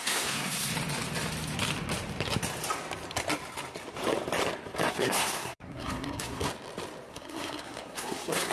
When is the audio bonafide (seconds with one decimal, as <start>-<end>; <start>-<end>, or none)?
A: 0.7-4.9; 6.5-7.1